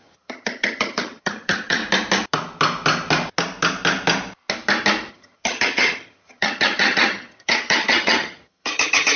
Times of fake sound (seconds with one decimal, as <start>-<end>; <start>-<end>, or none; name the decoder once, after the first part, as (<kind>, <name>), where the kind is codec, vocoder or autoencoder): 0.0-1.8 (vocoder, HiFi-GAN); 5.1-9.2